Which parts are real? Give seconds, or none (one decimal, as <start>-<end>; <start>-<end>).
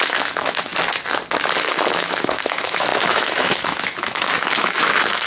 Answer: 0.7-1.6